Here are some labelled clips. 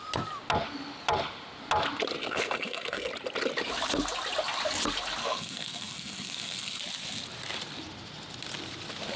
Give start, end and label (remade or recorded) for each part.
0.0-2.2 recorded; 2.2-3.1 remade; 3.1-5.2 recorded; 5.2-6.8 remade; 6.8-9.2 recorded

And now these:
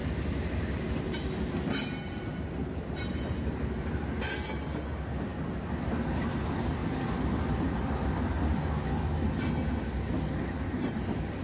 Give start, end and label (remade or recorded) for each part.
0.0-4.1 remade; 4.1-11.4 recorded

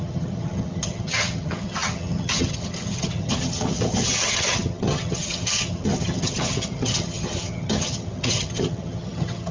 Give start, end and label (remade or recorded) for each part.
0.0-9.5 remade